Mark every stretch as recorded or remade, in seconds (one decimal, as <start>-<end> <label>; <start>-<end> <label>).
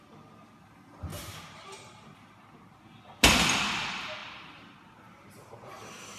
0.0-1.1 recorded; 1.1-2.8 remade; 2.8-4.2 recorded; 4.2-5.1 remade; 5.1-6.2 recorded